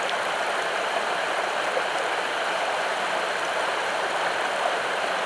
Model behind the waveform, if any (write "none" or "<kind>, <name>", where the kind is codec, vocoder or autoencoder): none